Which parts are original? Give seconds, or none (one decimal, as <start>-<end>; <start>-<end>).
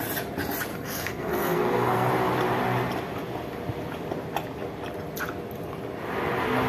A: 0.0-0.7; 2.1-6.7